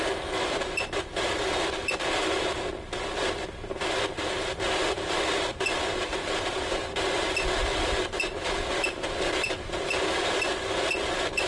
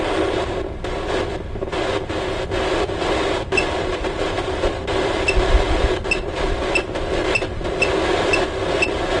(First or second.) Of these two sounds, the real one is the second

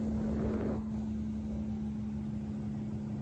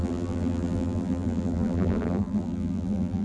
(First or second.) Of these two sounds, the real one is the first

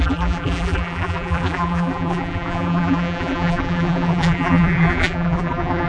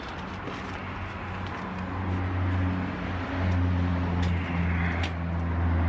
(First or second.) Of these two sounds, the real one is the second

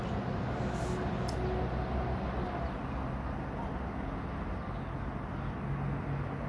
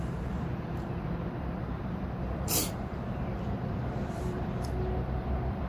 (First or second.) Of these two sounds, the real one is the first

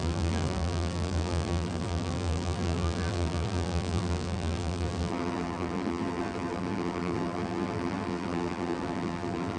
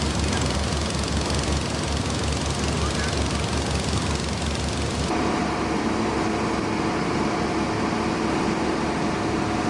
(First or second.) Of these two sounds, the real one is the second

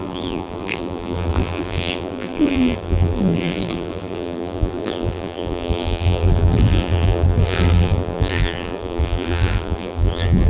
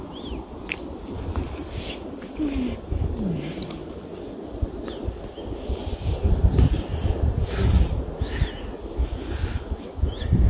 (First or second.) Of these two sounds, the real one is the second